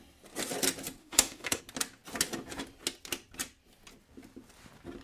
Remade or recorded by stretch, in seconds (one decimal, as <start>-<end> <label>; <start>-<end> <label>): 0.0-1.0 recorded; 1.0-1.6 remade; 1.6-5.0 recorded